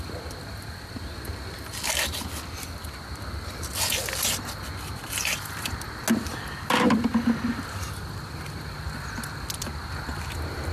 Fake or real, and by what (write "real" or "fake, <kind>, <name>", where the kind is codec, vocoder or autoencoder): real